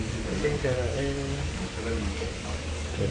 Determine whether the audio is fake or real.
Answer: fake